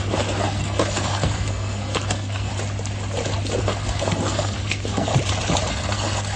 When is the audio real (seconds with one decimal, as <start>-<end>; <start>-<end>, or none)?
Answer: 2.5-3.6; 5.1-5.7